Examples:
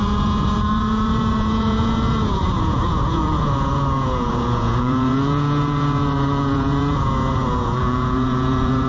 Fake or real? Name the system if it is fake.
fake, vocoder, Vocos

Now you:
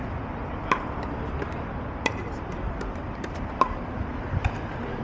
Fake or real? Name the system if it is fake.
real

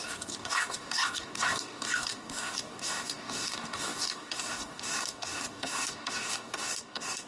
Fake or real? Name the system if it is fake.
fake, codec, DAC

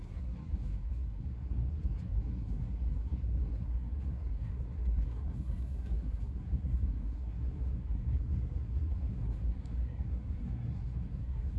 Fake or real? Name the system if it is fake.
fake, codec, SNAC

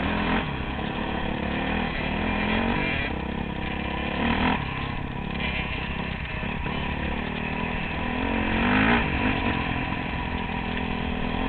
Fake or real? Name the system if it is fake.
real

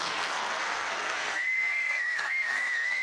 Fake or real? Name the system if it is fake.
fake, codec, SNAC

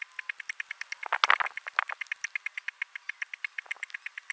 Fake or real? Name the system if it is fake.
real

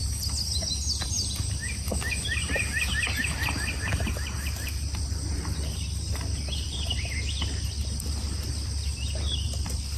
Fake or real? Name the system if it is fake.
real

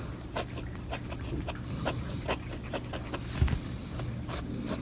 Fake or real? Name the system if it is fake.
real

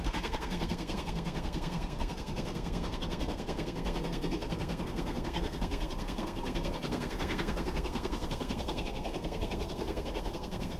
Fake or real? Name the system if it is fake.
fake, codec, SNAC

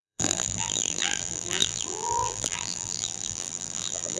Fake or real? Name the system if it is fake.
fake, vocoder, BigVGAN v2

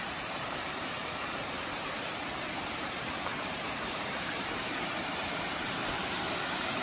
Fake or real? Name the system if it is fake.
fake, vocoder, BigVGAN v2